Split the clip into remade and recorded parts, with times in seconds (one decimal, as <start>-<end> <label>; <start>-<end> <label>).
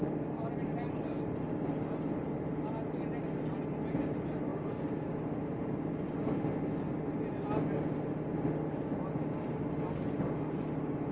0.0-11.1 recorded